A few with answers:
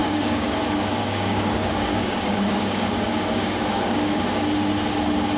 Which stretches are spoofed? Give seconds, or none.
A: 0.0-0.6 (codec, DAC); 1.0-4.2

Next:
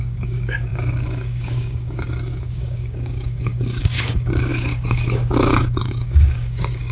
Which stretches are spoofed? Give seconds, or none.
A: 0.0-6.9 (codec, DAC)

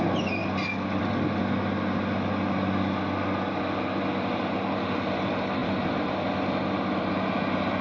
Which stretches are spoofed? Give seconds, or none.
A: none

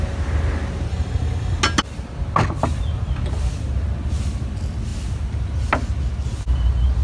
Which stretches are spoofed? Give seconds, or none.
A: 0.9-1.6 (codec, DAC)

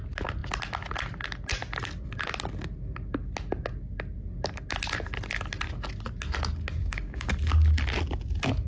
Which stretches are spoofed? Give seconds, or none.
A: 6.8-7.3 (codec, DAC)

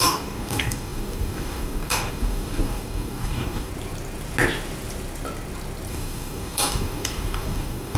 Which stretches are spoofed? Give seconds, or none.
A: 0.0-3.7 (codec, DAC); 5.9-8.0

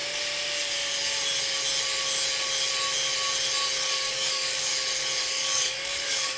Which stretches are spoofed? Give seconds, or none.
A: 3.8-4.7 (codec, DAC); 5.3-6.4